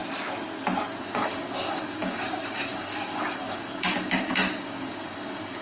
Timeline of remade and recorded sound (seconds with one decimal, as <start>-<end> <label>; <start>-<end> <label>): 0.0-1.0 recorded; 1.0-5.6 remade

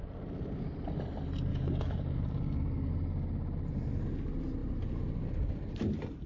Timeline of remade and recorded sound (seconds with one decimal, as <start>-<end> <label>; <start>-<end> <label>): 0.0-1.5 recorded; 1.5-2.9 remade; 2.9-6.3 recorded